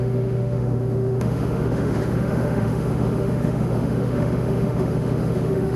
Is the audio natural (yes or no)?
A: no